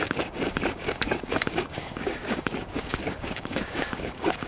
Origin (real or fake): fake